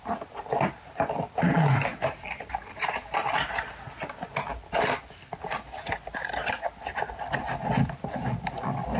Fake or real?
real